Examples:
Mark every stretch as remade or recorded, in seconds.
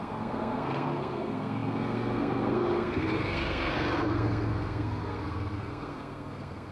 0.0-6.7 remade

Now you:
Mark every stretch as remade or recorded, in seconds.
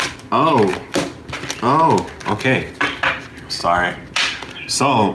0.0-5.1 recorded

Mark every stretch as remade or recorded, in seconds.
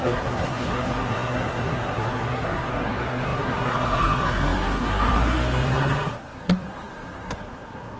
0.0-8.0 remade